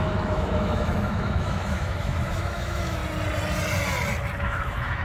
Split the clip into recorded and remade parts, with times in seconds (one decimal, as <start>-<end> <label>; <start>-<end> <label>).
0.0-3.0 remade; 3.0-4.4 recorded; 4.4-5.0 remade

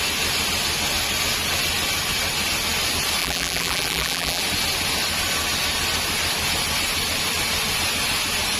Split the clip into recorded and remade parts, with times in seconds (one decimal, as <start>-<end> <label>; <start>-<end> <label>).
0.0-3.2 recorded; 3.2-4.4 remade; 4.4-8.6 recorded

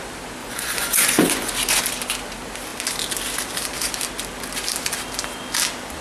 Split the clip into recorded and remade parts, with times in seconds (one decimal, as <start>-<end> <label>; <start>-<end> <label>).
0.0-0.4 recorded; 0.4-1.5 remade; 1.5-6.0 recorded

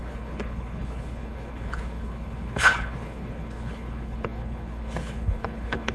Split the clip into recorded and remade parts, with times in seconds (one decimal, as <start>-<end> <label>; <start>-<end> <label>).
0.0-5.9 remade

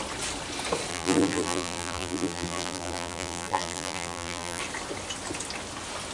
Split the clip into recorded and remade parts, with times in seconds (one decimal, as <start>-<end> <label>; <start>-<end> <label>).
0.0-0.9 recorded; 0.9-4.6 remade; 4.6-6.1 recorded

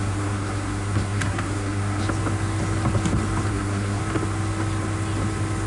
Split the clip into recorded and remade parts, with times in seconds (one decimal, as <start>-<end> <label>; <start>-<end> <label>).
0.0-2.0 remade; 2.0-3.5 recorded; 3.5-4.0 remade; 4.0-5.7 recorded